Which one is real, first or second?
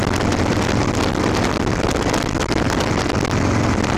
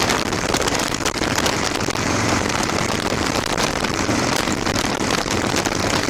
first